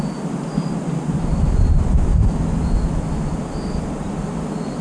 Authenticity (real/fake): real